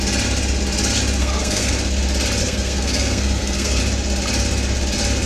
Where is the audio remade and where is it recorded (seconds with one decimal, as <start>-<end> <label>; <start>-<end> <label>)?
0.0-1.2 recorded; 1.2-1.7 remade; 1.7-2.4 recorded; 2.4-3.8 remade; 3.8-5.3 recorded